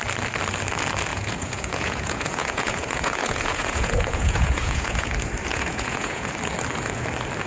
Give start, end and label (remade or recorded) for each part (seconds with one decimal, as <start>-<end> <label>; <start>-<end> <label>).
0.0-1.1 recorded; 1.1-5.1 remade; 5.1-5.5 recorded; 5.5-6.3 remade; 6.3-7.5 recorded